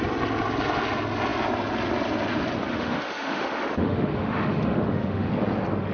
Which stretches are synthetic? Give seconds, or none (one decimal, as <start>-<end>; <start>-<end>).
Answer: 2.7-5.3